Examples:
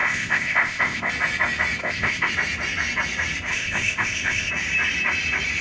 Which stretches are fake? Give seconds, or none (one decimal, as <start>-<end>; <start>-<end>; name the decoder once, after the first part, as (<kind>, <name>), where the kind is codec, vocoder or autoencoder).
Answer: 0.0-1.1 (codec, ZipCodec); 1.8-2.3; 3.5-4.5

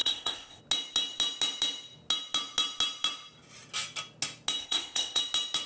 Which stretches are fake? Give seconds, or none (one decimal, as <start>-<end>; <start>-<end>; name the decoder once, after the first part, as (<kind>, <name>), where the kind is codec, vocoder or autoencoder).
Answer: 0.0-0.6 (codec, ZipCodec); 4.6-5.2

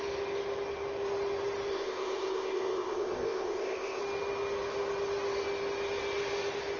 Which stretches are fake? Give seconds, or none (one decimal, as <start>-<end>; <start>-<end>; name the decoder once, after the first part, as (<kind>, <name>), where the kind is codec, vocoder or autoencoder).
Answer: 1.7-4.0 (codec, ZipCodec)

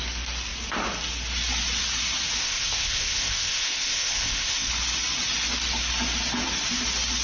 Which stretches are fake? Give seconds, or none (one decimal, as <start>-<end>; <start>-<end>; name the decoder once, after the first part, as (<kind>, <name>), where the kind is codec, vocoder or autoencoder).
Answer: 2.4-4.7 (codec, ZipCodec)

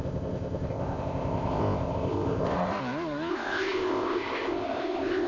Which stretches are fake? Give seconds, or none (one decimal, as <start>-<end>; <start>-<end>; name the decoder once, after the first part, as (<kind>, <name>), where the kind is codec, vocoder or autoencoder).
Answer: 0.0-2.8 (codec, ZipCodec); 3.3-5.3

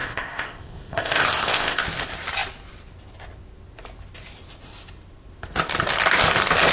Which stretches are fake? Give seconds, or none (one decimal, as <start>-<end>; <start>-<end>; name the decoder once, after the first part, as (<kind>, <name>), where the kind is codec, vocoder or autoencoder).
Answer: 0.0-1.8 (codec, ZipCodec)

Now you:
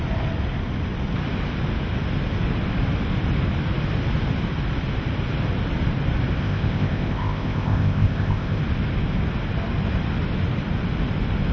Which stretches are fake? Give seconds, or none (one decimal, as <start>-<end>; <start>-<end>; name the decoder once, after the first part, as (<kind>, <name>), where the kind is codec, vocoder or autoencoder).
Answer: 6.4-8.6 (codec, ZipCodec)

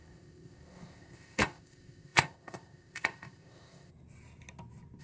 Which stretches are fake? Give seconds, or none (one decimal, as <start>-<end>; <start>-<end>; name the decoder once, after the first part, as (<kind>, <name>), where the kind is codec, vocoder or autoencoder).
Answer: 0.0-3.9 (codec, ZipCodec)